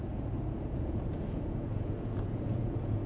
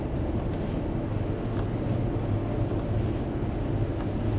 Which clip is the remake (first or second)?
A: first